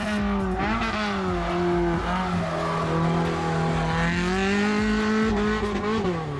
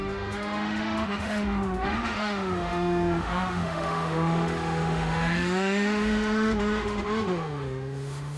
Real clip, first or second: first